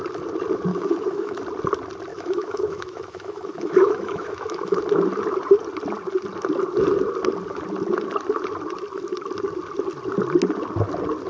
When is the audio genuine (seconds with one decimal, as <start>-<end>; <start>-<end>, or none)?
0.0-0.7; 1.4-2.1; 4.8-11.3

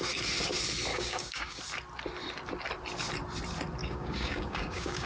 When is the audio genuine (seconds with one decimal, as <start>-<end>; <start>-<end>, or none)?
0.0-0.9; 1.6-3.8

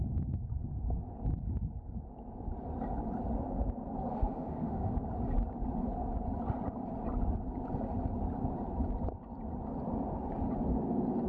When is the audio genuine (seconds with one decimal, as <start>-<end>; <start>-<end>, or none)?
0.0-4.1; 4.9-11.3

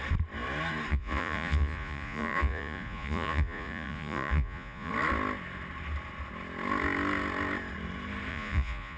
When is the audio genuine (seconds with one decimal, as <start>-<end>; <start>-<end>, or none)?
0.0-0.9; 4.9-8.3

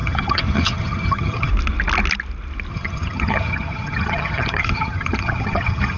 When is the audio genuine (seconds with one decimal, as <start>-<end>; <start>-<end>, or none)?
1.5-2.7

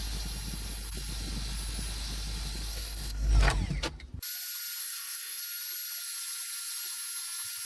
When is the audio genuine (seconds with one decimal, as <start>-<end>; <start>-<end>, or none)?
0.0-2.7; 3.3-4.8; 5.4-7.6

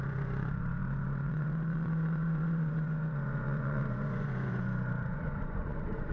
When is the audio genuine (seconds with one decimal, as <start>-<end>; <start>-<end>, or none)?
none

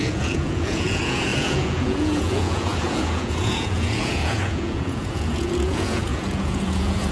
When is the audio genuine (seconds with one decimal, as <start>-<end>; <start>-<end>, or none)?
none